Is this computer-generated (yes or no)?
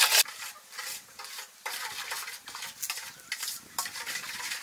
no